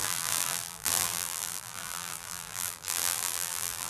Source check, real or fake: fake